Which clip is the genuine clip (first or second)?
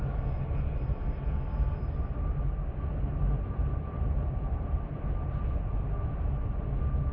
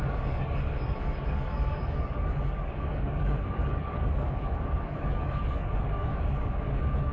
first